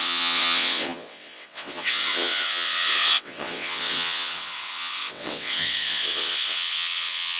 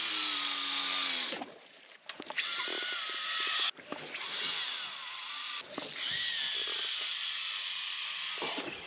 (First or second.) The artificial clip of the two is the first